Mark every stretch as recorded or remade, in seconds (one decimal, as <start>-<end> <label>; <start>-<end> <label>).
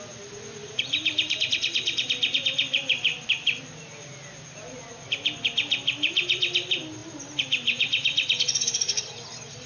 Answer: 0.0-0.6 recorded; 0.6-1.4 remade; 1.4-3.1 recorded; 3.1-3.6 remade; 3.6-9.7 recorded